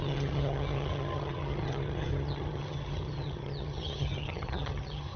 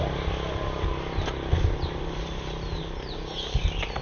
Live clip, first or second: second